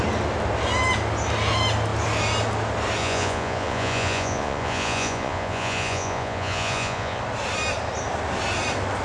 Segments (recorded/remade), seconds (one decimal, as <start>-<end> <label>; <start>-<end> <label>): 0.0-3.0 recorded; 3.0-7.2 remade; 7.2-9.0 recorded